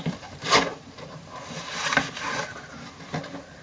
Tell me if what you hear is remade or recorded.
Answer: recorded